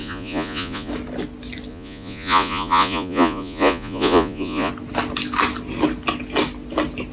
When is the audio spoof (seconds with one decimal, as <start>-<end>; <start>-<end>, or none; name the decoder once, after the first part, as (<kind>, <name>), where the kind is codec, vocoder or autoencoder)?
0.0-0.9 (vocoder, Vocos); 1.7-4.7